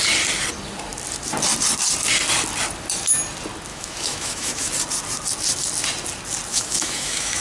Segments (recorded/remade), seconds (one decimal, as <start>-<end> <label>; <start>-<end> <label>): 0.0-3.7 recorded; 3.7-4.7 remade; 4.7-6.5 recorded; 6.5-7.4 remade